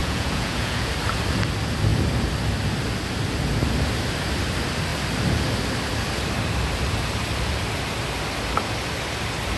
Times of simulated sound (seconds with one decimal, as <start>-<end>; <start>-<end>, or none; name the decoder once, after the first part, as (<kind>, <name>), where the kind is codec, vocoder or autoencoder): 0.0-0.9 (vocoder, Vocos)